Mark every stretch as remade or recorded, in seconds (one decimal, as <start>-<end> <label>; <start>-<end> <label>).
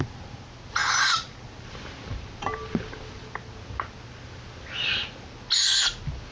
0.0-6.3 recorded